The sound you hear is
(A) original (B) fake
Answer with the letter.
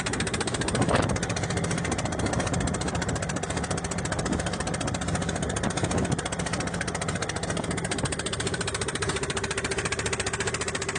A